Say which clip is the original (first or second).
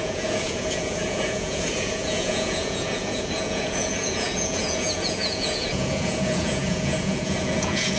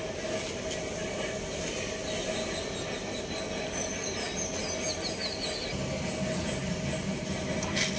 second